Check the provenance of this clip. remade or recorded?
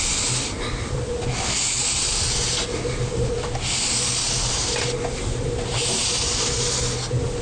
recorded